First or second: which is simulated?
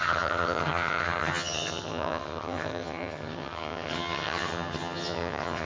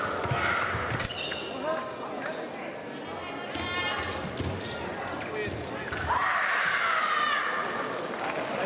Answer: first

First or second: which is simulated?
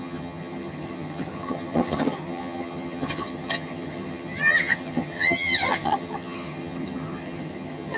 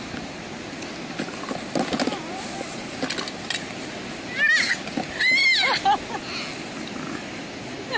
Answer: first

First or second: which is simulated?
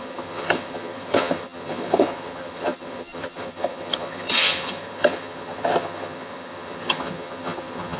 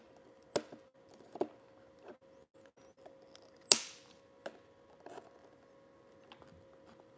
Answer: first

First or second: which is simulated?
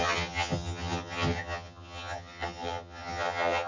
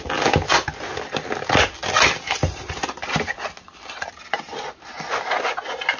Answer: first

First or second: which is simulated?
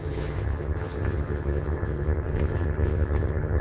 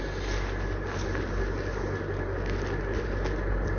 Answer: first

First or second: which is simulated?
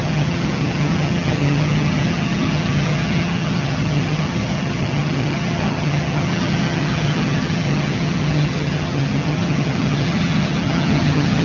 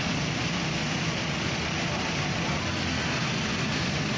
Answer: first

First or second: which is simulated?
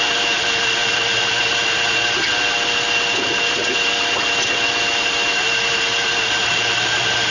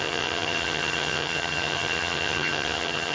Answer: second